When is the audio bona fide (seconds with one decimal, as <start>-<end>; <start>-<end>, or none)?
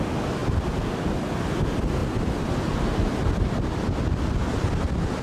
0.0-5.2